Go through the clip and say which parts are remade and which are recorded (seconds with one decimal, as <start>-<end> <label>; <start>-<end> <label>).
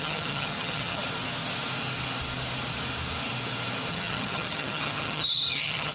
0.0-1.0 remade; 1.0-3.9 recorded; 3.9-5.9 remade